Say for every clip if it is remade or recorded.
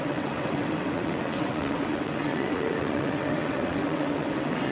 remade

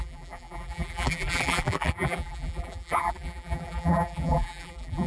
remade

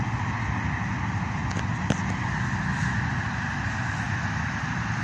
recorded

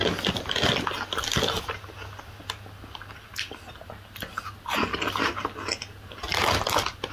recorded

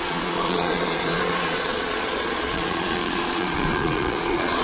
remade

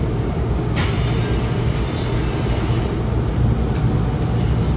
recorded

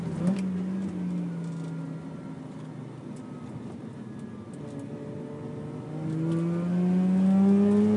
recorded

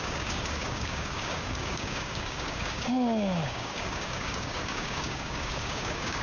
remade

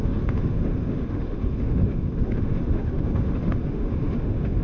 remade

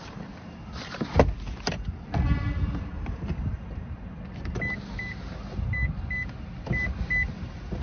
recorded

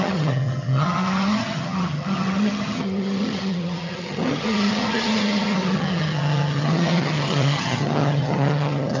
remade